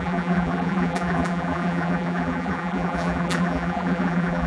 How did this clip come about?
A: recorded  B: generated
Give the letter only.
B